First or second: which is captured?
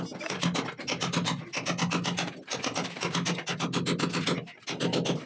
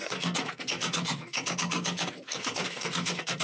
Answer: first